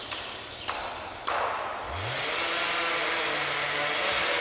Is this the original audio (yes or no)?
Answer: yes